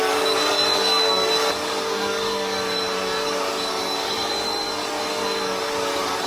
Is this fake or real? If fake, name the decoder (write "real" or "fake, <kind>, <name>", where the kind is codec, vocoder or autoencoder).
fake, codec, DAC